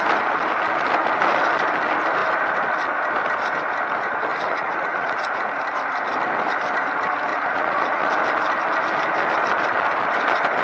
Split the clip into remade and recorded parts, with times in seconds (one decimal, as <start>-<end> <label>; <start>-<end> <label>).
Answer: 0.0-4.3 recorded; 4.3-5.6 remade; 5.6-7.3 recorded; 7.3-8.1 remade; 8.1-10.6 recorded